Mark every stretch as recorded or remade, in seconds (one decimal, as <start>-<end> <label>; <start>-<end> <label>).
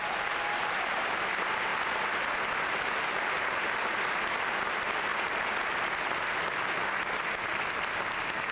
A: 0.0-7.9 recorded; 7.9-8.5 remade